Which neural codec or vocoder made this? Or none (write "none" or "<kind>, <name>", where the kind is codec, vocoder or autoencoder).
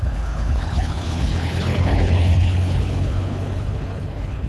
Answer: codec, HILCodec